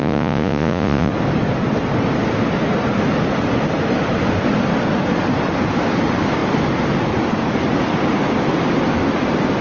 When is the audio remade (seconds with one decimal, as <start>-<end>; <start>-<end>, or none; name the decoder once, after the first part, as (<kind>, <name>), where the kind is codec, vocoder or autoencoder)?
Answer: 0.0-1.1 (vocoder, Vocos)